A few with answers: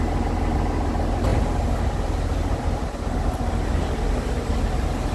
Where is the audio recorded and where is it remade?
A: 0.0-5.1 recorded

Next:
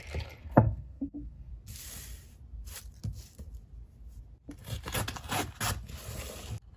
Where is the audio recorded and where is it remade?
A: 0.0-0.4 recorded; 0.4-1.5 remade; 1.5-6.8 recorded

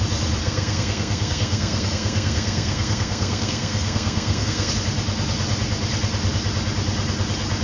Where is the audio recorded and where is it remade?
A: 0.0-0.4 recorded; 0.4-4.7 remade; 4.7-7.6 recorded